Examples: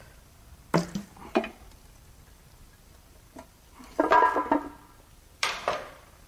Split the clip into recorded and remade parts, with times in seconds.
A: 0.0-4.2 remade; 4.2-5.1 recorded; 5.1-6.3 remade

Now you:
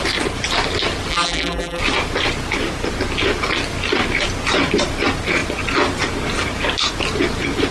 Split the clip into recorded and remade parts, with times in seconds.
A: 0.0-1.1 recorded; 1.1-1.8 remade; 1.8-7.7 recorded